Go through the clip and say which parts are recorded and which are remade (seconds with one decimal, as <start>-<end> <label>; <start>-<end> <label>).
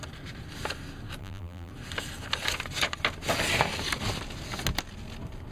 0.0-1.2 recorded; 1.2-1.7 remade; 1.7-5.5 recorded